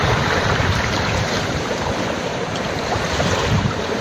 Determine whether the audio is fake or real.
fake